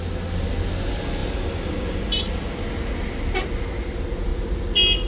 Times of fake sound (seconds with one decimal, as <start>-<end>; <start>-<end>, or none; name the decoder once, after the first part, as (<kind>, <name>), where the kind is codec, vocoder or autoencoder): none

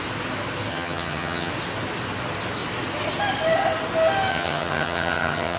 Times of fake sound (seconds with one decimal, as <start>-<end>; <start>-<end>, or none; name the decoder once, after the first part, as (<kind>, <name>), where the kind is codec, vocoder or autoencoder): 0.7-1.5 (vocoder, HiFi-GAN); 4.3-5.6